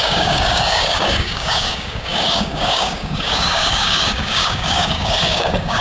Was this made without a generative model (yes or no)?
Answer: no